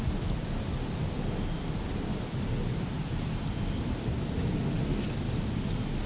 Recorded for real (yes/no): yes